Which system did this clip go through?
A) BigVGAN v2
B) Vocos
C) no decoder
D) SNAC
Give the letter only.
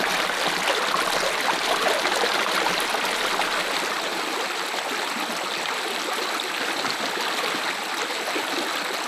C